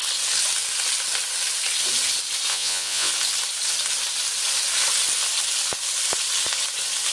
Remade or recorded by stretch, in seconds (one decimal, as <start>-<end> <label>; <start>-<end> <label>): 0.0-2.5 recorded; 2.5-3.1 remade; 3.1-7.1 recorded